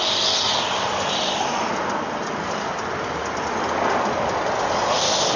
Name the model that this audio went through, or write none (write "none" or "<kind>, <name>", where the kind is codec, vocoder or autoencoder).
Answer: none